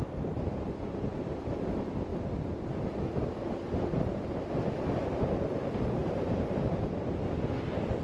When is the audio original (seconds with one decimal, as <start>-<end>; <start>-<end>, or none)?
0.0-1.1; 1.6-6.0; 7.3-8.0